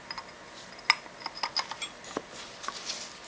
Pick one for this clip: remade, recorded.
recorded